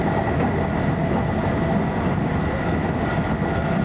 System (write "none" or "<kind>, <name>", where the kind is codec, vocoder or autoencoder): none